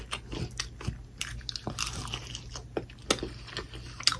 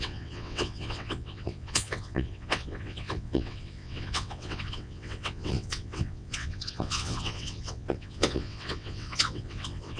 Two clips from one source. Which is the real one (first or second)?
first